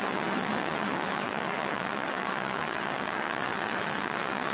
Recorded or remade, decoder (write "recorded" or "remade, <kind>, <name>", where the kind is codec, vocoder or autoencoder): remade, vocoder, WaveNeXt